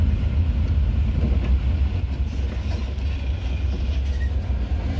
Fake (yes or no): no